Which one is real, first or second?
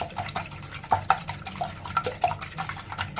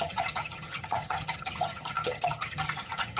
first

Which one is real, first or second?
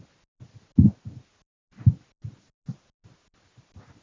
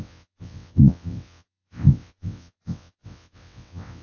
first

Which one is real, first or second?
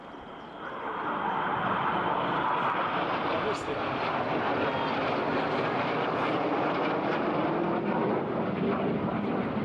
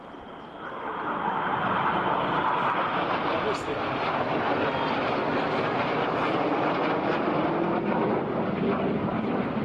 first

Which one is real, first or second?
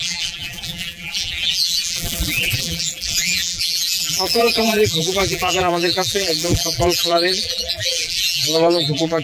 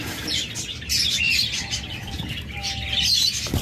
second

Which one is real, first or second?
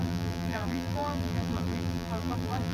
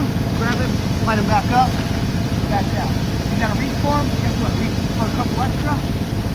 second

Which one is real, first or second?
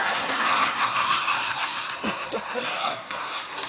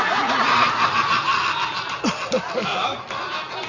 second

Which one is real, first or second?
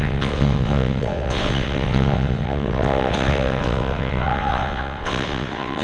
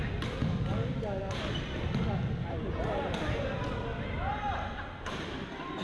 second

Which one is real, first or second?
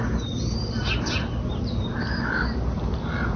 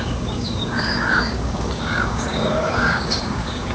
first